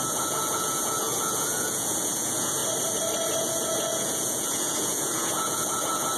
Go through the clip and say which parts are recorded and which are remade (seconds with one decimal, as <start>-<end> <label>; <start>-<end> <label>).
0.0-2.6 remade; 2.6-3.4 recorded; 3.4-6.2 remade